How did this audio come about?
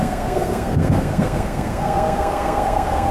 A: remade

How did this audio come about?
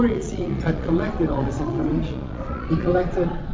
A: remade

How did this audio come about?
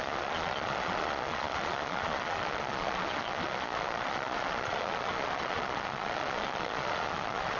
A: remade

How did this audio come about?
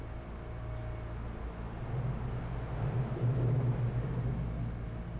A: recorded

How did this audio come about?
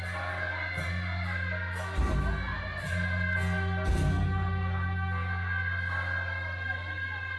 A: recorded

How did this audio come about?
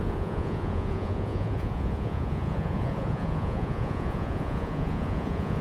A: remade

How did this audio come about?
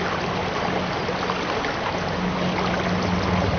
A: recorded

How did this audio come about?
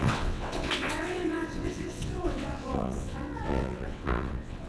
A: remade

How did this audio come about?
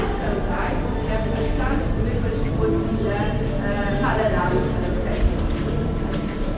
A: remade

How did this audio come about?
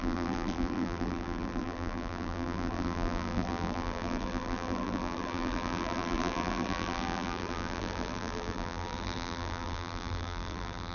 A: remade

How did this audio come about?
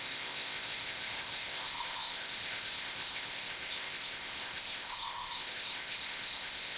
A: remade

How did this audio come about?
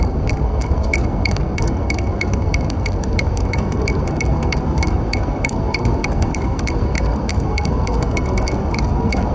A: remade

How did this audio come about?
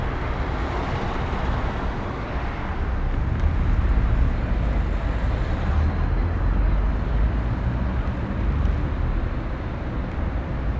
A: recorded